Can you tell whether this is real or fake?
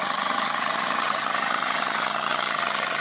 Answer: fake